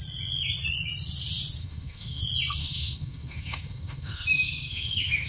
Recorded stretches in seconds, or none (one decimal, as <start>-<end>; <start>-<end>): 0.0-1.6; 2.2-2.6